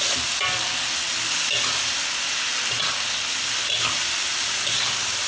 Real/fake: real